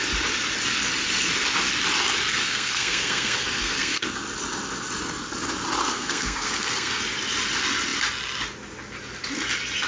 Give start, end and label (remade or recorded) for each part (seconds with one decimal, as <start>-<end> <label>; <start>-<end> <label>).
0.0-2.3 recorded; 2.3-4.0 remade; 4.0-5.8 recorded; 5.8-7.0 remade; 7.0-9.9 recorded